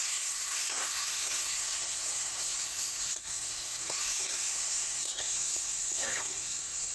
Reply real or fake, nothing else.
fake